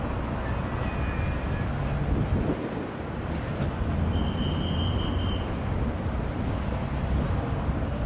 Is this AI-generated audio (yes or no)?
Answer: no